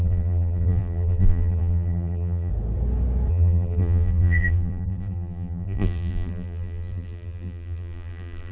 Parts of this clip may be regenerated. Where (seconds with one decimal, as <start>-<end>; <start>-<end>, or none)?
0.0-2.5; 3.3-8.5